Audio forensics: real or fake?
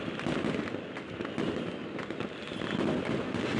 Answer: real